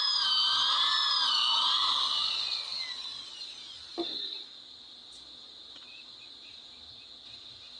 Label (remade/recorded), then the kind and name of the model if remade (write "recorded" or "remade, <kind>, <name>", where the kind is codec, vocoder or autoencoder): recorded